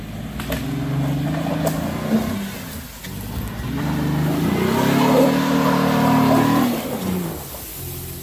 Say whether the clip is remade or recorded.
recorded